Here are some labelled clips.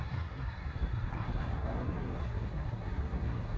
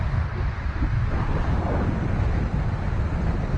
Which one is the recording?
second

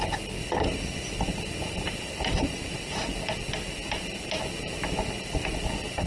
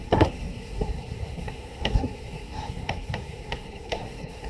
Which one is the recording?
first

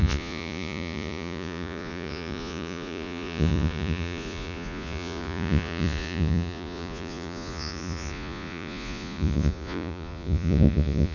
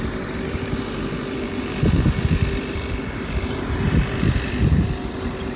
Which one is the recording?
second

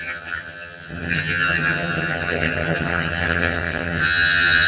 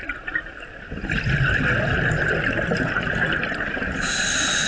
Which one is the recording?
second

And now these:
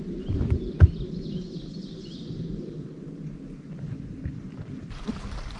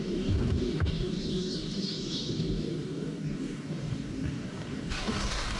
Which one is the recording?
first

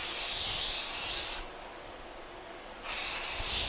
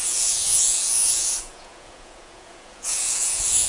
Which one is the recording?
first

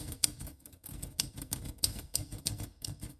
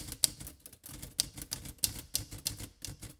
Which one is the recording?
second